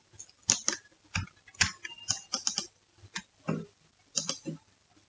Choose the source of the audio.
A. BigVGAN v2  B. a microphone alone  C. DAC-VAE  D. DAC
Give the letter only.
B